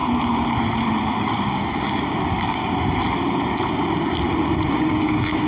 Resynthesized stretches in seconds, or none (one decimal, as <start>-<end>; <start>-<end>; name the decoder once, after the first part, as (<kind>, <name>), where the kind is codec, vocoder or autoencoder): 1.2-2.6 (codec, DAC); 4.7-5.5

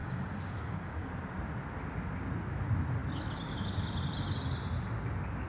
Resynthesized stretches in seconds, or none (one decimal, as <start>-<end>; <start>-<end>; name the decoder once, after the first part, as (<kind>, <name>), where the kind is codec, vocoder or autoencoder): 0.0-1.1 (codec, DAC)

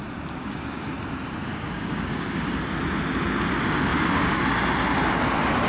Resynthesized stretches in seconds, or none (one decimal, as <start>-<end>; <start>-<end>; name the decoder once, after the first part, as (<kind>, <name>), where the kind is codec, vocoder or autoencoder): 0.4-0.9 (codec, DAC); 1.5-2.5; 3.9-4.4

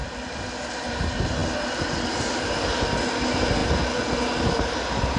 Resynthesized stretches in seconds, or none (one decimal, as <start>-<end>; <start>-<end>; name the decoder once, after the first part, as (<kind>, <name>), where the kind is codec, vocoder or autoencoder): none

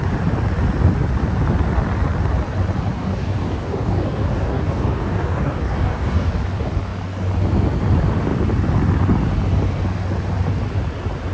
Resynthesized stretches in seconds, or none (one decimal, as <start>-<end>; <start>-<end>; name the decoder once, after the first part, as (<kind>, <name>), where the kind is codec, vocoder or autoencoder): 3.0-6.3 (codec, DAC)

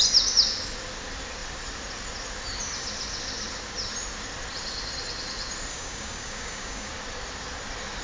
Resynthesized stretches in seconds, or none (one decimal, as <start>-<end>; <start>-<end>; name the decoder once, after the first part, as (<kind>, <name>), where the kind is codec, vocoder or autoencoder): 5.7-6.9 (codec, DAC)